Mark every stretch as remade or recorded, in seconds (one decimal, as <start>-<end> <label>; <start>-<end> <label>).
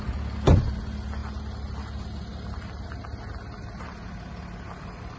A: 0.0-5.2 recorded